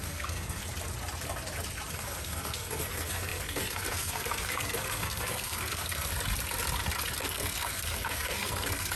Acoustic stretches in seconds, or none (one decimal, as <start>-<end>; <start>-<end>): 0.6-1.9; 6.1-7.2